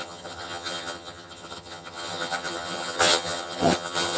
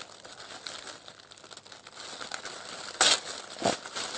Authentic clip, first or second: second